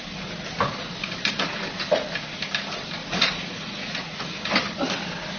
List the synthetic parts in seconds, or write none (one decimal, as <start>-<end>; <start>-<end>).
3.0-4.5